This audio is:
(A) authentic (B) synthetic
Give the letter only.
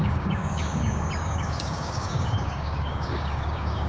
B